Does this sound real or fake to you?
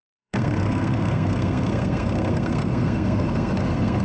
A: fake